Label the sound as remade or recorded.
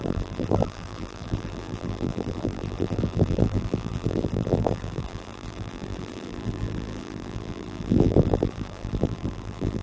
remade